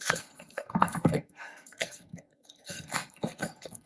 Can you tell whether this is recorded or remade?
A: remade